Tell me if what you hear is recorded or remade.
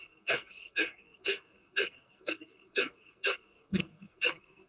remade